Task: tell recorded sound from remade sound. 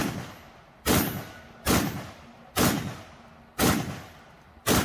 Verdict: recorded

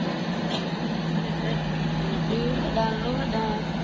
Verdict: recorded